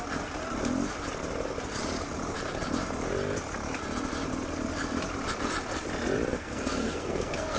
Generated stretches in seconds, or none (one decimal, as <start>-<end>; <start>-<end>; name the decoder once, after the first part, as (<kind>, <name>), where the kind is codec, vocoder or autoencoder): 6.3-7.6 (codec, SNAC)